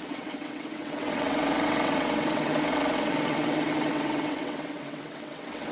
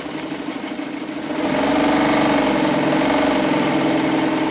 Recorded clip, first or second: second